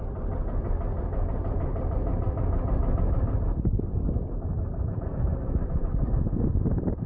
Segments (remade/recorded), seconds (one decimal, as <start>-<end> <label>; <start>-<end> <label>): 0.0-7.1 recorded